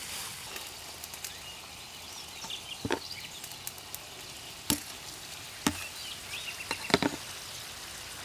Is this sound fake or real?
real